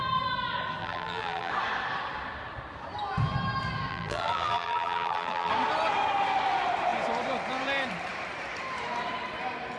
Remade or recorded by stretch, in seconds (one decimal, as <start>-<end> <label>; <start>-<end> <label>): 0.0-0.8 recorded; 0.8-1.5 remade; 1.5-3.9 recorded; 3.9-5.5 remade; 5.5-9.8 recorded